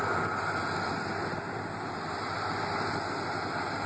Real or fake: real